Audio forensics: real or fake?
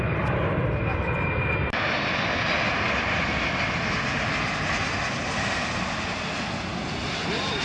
real